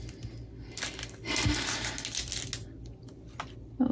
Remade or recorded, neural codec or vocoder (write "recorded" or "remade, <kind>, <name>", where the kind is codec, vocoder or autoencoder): recorded